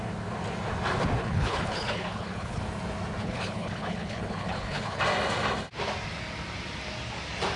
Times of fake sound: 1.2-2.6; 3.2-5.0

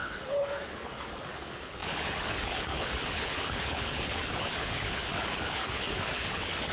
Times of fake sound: 0.0-6.7